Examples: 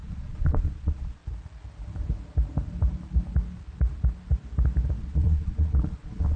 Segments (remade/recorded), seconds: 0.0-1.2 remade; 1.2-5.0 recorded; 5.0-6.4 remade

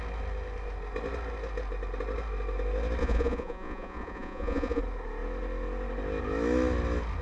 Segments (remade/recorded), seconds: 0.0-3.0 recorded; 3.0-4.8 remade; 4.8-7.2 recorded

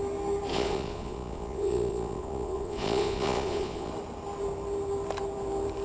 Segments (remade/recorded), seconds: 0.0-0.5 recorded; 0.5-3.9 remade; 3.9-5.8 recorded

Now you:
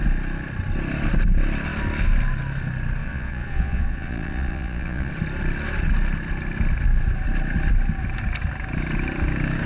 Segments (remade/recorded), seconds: 0.0-3.0 recorded; 3.0-5.1 remade; 5.1-9.7 recorded

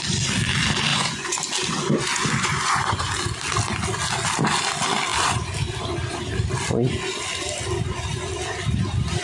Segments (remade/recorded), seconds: 0.0-0.9 recorded; 0.9-1.4 remade; 1.4-2.1 recorded; 2.1-3.1 remade; 3.1-9.2 recorded

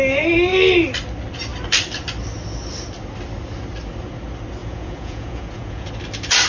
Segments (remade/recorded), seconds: 0.0-4.6 recorded; 4.6-5.9 remade; 5.9-6.5 recorded

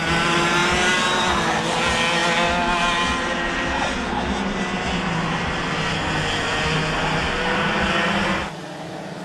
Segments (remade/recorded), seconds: 0.0-9.2 recorded

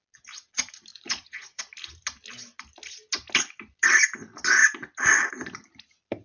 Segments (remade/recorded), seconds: 0.0-0.9 recorded; 0.9-1.6 remade; 1.6-6.2 recorded